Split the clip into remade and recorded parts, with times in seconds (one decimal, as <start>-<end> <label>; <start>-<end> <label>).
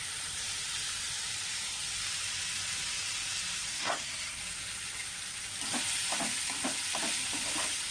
0.0-3.7 recorded; 3.7-4.4 remade; 4.4-7.9 recorded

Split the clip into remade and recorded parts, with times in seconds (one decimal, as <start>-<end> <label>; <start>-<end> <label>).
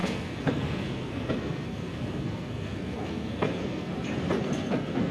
0.0-3.9 remade; 3.9-4.4 recorded; 4.4-5.1 remade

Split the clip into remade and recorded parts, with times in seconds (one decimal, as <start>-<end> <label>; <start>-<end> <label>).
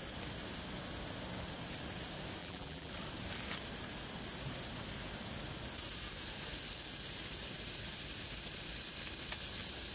0.0-2.4 recorded; 2.4-2.9 remade; 2.9-9.9 recorded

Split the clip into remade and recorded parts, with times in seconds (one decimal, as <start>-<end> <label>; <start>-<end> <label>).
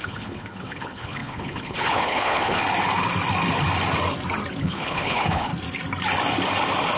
0.0-2.6 remade; 2.6-4.6 recorded; 4.6-5.5 remade; 5.5-7.0 recorded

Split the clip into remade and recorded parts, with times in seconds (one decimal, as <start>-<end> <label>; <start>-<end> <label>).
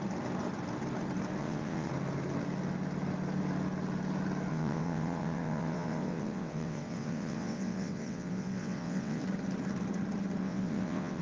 0.0-1.4 recorded; 1.4-1.9 remade; 1.9-4.5 recorded; 4.5-9.2 remade; 9.2-10.4 recorded; 10.4-11.2 remade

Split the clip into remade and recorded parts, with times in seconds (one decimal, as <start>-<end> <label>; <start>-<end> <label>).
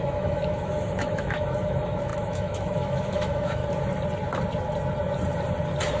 0.0-3.6 remade; 3.6-6.0 recorded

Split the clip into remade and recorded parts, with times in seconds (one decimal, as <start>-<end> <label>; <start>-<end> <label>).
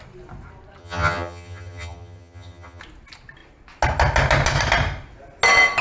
0.0-0.8 recorded; 0.8-2.8 remade; 2.8-5.8 recorded